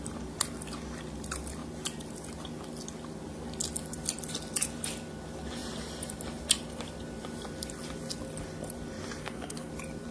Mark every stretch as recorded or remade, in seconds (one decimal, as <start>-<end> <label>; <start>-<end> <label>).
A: 0.0-9.2 recorded; 9.2-9.7 remade; 9.7-10.1 recorded